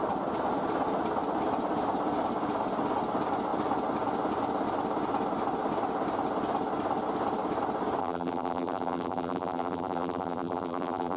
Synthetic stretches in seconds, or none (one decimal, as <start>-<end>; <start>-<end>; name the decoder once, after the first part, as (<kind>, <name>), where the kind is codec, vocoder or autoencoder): 8.0-11.2 (vocoder, BigVGAN v2)